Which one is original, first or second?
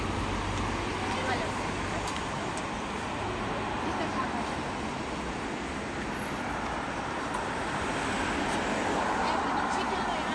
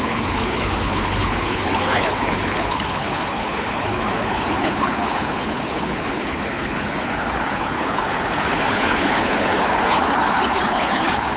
first